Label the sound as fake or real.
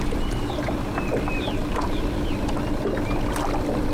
real